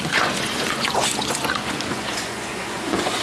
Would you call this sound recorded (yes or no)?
no